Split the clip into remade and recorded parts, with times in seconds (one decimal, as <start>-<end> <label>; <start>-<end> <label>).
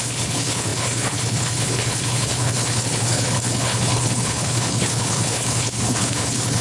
0.0-6.6 remade